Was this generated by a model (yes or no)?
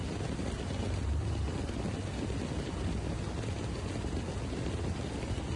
no